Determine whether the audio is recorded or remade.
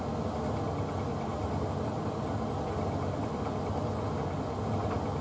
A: recorded